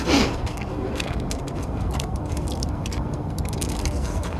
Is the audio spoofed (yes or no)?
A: yes